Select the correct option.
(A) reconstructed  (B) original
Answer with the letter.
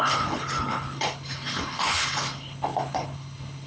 A